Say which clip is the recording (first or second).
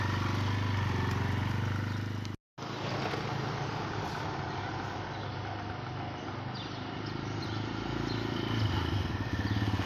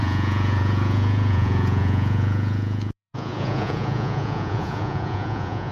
first